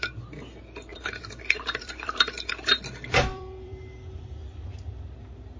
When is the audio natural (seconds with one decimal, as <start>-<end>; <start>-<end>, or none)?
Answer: 0.0-0.9; 2.5-3.3; 4.4-5.6